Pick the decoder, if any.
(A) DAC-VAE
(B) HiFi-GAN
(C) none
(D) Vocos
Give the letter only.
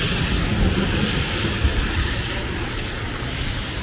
C